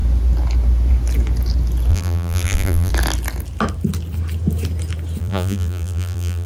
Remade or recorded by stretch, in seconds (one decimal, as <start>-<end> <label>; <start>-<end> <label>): 0.0-1.9 recorded; 1.9-2.9 remade; 2.9-5.2 recorded; 5.2-6.5 remade